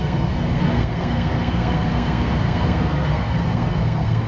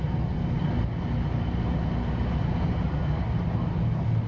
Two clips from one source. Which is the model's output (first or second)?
first